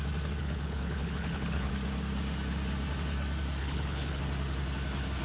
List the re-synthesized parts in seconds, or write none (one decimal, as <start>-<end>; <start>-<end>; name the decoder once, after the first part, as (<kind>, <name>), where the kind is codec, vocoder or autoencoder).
0.4-1.7 (codec, HILCodec); 3.6-4.2